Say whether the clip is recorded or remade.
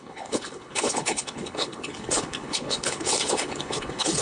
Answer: remade